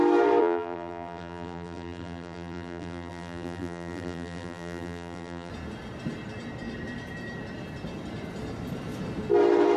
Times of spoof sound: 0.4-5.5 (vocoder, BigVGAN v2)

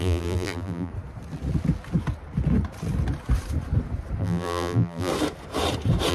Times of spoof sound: 0.0-0.9 (vocoder, BigVGAN v2); 4.2-5.1

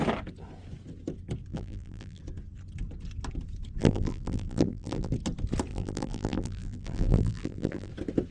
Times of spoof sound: 1.5-2.2 (vocoder, BigVGAN v2); 3.8-5.1; 5.7-7.9

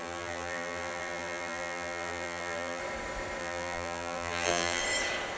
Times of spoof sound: 0.0-2.8 (vocoder, BigVGAN v2); 3.4-4.8

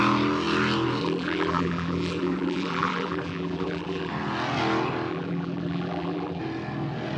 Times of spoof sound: 1.0-4.1 (vocoder, BigVGAN v2); 5.1-6.4